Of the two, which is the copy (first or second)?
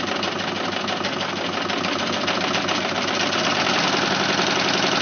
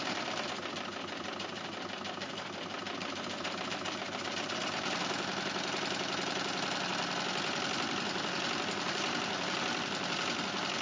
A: second